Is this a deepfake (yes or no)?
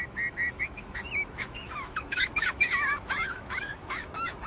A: yes